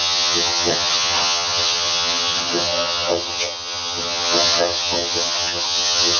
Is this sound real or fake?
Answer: fake